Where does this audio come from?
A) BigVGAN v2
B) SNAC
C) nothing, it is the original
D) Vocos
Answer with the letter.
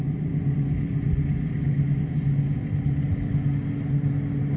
C